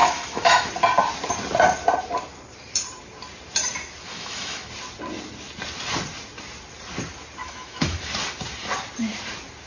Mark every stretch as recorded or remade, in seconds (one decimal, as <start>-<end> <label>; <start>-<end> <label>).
0.0-0.7 remade; 0.7-4.1 recorded; 4.1-4.7 remade; 4.7-7.4 recorded; 7.4-8.0 remade; 8.0-9.7 recorded